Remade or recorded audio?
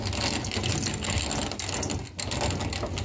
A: recorded